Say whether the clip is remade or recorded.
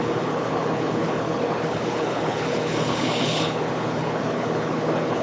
remade